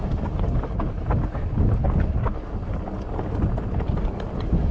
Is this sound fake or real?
real